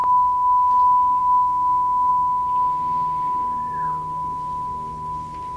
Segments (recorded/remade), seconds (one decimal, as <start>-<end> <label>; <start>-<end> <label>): 0.0-1.2 recorded; 1.2-2.1 remade; 2.1-5.6 recorded